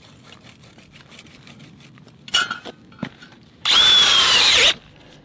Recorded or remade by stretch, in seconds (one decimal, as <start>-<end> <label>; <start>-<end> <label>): 0.0-3.0 recorded; 3.0-4.6 remade; 4.6-5.2 recorded